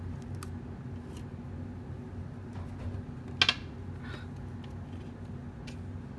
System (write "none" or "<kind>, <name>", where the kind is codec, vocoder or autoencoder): none